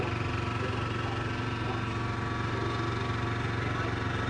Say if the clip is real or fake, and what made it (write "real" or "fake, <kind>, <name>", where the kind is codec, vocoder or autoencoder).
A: real